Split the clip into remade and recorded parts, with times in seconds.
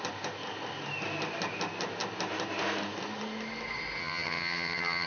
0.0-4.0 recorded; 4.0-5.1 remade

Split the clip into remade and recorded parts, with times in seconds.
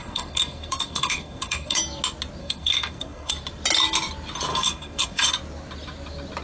0.0-1.8 remade; 1.8-2.4 recorded; 2.4-3.3 remade; 3.3-4.5 recorded; 4.5-5.2 remade; 5.2-6.4 recorded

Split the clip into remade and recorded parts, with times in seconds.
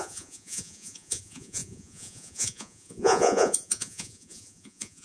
0.0-5.0 remade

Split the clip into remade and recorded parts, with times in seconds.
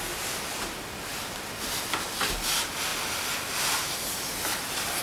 0.0-5.0 recorded